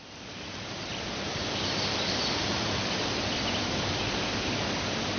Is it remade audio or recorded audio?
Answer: remade